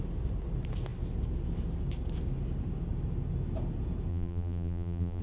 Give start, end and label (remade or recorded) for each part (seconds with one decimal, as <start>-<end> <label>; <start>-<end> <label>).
0.0-4.1 recorded; 4.1-5.2 remade